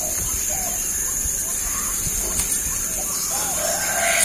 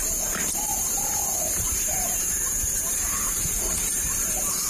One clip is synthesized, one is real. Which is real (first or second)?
first